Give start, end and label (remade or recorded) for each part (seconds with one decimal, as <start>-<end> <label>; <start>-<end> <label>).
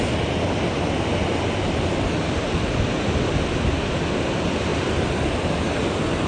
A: 0.0-6.3 recorded